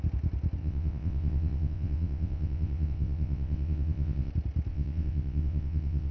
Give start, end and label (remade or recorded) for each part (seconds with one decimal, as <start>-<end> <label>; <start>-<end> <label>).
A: 0.0-0.6 recorded; 0.6-4.3 remade; 4.3-4.7 recorded; 4.7-6.1 remade